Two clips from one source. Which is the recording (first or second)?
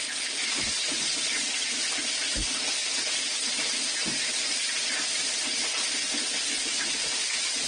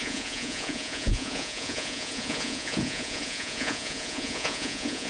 first